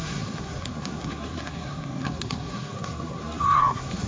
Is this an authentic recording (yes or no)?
no